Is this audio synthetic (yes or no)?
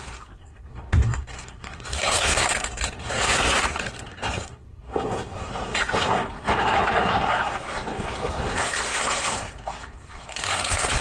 yes